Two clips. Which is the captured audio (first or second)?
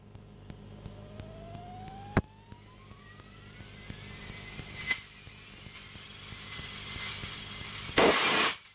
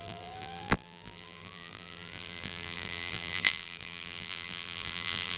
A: first